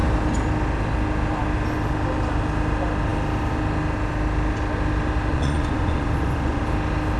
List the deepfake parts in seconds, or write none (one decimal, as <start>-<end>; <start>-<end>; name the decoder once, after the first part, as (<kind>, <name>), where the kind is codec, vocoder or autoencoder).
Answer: 5.3-6.6 (vocoder, Vocos)